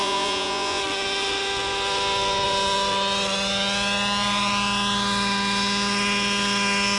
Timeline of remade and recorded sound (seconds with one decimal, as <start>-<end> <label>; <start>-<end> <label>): 0.0-0.8 remade; 0.8-7.0 recorded